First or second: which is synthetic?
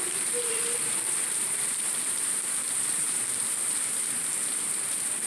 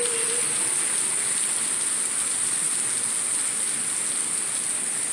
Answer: first